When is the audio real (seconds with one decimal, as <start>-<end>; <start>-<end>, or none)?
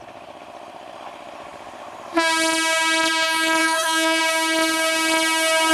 0.0-3.6; 4.2-5.7